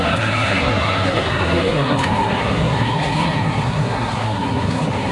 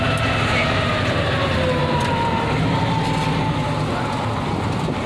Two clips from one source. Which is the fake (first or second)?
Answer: first